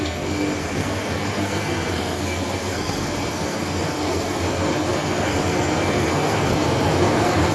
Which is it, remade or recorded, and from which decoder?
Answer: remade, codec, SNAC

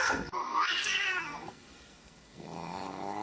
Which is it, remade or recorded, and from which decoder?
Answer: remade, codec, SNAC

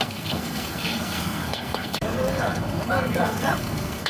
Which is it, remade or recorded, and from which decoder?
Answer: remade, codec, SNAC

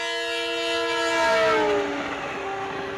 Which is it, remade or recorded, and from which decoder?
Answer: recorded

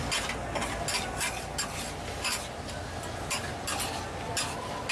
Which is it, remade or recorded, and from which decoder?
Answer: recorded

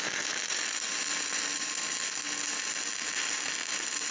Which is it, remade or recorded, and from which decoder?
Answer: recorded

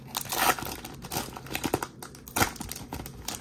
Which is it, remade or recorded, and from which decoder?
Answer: recorded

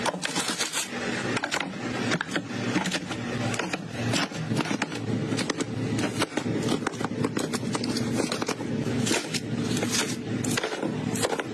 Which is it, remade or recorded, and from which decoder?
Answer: recorded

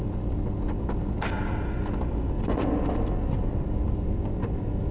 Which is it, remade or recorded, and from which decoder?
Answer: recorded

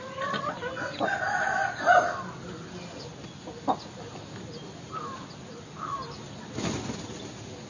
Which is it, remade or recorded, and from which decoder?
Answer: recorded